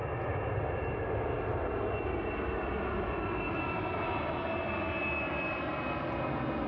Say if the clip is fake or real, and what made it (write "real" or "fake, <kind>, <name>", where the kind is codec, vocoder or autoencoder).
real